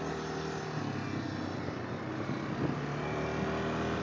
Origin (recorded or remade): recorded